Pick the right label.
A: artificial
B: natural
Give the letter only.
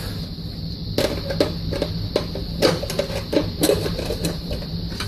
B